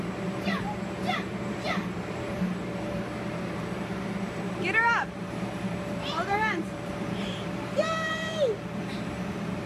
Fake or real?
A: fake